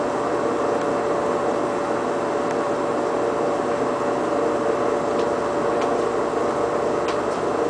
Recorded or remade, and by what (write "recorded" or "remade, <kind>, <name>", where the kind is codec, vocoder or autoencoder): recorded